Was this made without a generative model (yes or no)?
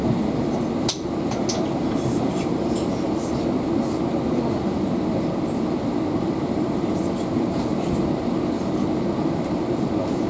yes